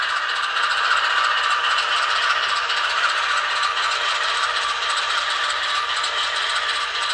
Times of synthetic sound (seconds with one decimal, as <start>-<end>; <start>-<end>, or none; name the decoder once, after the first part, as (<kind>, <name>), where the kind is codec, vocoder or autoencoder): none